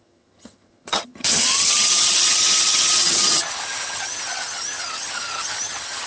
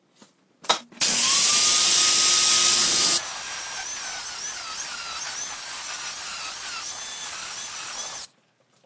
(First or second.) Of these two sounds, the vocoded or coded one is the first